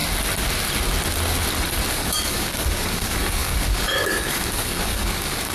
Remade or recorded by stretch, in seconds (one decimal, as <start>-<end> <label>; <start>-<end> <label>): 0.0-1.9 recorded; 1.9-5.5 remade